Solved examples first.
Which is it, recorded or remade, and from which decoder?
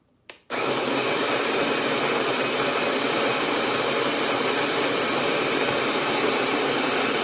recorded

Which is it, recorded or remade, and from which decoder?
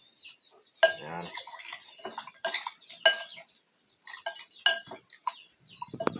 recorded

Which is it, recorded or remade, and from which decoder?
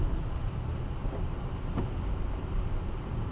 recorded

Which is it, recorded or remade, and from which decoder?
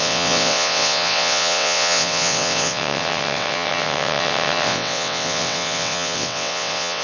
remade, vocoder, WaveNeXt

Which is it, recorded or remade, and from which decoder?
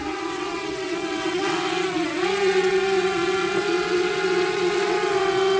remade, vocoder, WaveNeXt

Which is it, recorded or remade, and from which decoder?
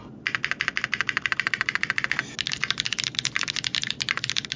recorded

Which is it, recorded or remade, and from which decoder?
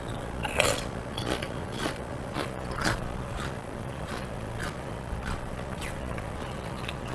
remade, vocoder, Vocos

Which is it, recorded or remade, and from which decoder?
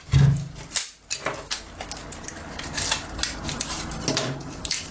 recorded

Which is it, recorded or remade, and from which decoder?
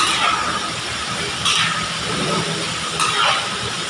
recorded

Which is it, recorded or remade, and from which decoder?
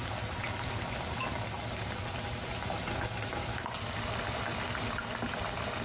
recorded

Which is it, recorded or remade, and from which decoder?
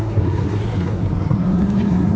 remade, codec, SNAC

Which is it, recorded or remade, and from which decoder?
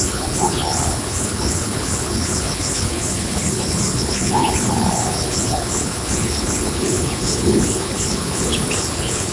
remade, codec, HILCodec